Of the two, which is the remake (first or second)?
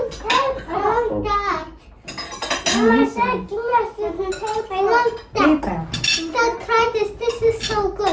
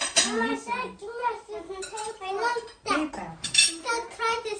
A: second